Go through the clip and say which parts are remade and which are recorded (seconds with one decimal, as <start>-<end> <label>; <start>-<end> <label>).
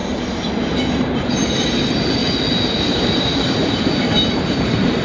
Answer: 0.0-0.7 recorded; 0.7-2.2 remade; 2.2-2.8 recorded; 2.8-5.0 remade